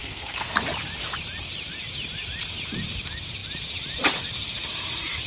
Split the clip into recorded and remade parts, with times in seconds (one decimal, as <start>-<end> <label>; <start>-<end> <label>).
0.0-0.6 remade; 0.6-5.3 recorded